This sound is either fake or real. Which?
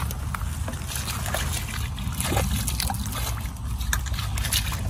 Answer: real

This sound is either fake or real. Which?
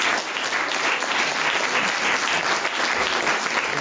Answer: real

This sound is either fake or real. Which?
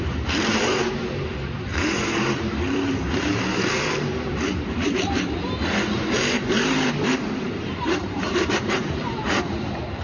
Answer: fake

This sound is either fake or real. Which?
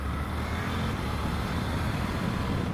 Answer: fake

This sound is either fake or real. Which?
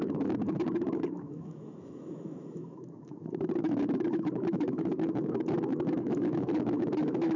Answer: fake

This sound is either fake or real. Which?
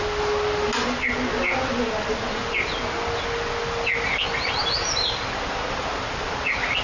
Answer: real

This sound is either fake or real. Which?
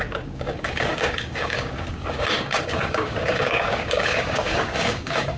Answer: fake